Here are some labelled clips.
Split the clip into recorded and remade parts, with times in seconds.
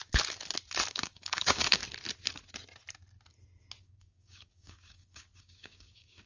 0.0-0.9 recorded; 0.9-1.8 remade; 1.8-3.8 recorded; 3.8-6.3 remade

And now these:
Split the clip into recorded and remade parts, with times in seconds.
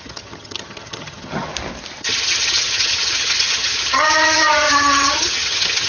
0.0-1.5 remade; 1.5-2.0 recorded; 2.0-5.9 remade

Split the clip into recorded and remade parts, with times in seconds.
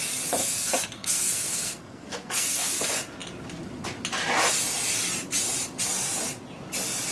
0.0-0.4 recorded; 0.4-2.7 remade; 2.7-7.1 recorded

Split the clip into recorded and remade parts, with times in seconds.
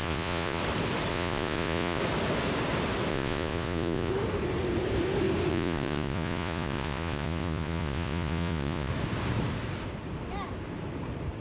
0.0-0.6 remade; 0.6-1.1 recorded; 1.1-2.0 remade; 2.0-3.1 recorded; 3.1-4.1 remade; 4.1-5.5 recorded; 5.5-8.9 remade; 8.9-11.4 recorded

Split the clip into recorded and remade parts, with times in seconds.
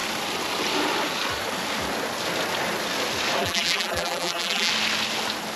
0.0-3.4 recorded; 3.4-4.7 remade; 4.7-5.6 recorded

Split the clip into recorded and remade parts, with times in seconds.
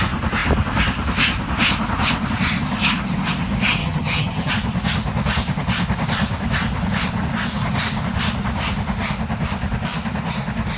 0.0-3.8 recorded; 3.8-4.5 remade; 4.5-10.8 recorded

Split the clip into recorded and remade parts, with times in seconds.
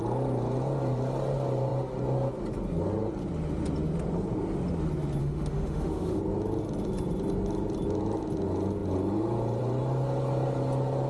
0.0-5.2 recorded; 5.2-6.2 remade; 6.2-11.1 recorded